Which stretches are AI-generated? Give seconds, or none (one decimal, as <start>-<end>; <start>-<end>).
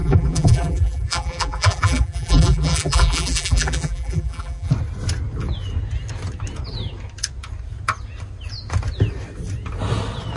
0.0-4.7